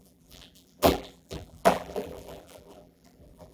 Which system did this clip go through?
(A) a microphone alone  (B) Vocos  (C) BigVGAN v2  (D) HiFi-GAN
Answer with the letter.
C